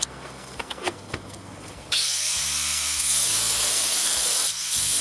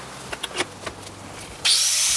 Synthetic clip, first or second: first